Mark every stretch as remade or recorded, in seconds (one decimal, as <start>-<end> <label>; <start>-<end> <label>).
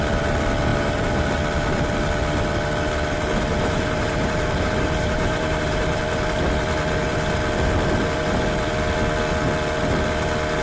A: 0.0-0.7 recorded; 0.7-1.3 remade; 1.3-3.5 recorded; 3.5-6.0 remade; 6.0-10.6 recorded